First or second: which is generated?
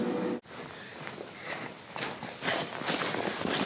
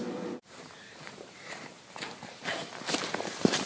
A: second